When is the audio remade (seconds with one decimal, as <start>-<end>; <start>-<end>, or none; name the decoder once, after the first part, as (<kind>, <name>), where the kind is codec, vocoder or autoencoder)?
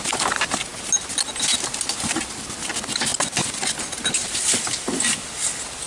none